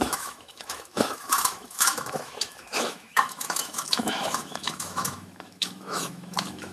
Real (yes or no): no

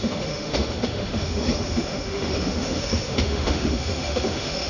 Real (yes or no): no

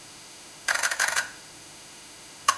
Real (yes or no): no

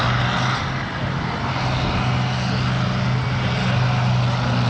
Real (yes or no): yes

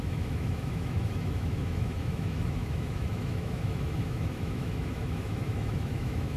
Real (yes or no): no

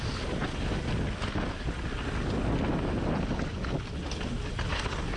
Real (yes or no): yes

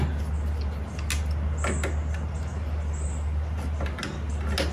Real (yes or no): yes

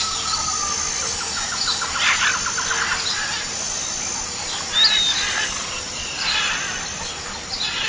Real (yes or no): yes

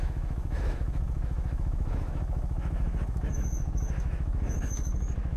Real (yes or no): no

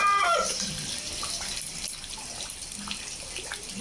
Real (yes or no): yes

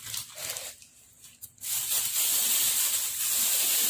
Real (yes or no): yes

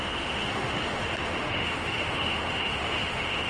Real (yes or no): no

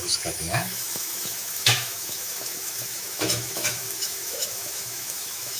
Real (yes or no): no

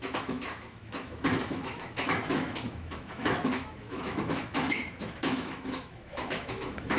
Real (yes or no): no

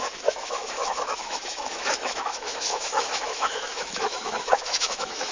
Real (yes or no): no